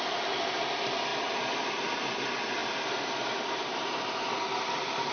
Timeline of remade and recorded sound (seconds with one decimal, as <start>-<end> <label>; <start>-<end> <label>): 0.0-5.1 recorded